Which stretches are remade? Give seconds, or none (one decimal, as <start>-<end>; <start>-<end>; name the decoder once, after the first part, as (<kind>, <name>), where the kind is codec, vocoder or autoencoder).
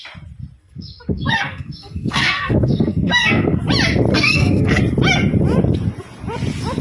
0.6-3.6 (codec, SNAC); 4.1-4.8